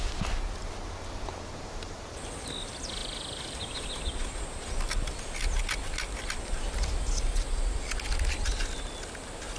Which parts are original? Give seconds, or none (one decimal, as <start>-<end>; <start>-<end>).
0.0-9.6